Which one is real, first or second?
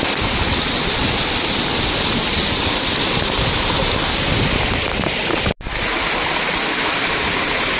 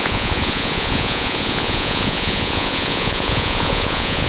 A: first